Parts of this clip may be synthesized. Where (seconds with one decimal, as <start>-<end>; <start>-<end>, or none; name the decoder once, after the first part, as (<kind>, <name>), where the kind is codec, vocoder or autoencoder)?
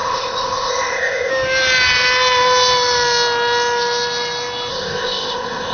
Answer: 0.0-1.3 (codec, ZipCodec); 4.7-5.7